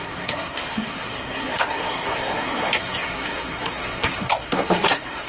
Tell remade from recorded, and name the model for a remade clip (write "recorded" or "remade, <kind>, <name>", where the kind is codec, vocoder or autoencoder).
remade, codec, SNAC